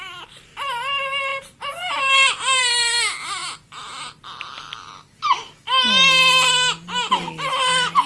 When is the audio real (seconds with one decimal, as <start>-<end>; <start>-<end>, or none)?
0.0-1.3; 2.6-8.1